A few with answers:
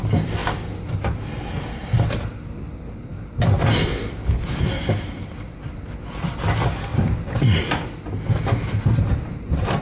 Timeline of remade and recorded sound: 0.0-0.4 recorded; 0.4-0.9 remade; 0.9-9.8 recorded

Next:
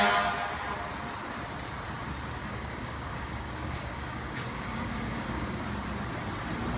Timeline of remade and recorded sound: 0.0-2.4 recorded; 2.4-5.6 remade; 5.6-6.8 recorded

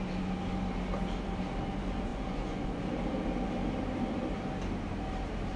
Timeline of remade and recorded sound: 0.0-2.1 recorded; 2.1-2.8 remade; 2.8-5.6 recorded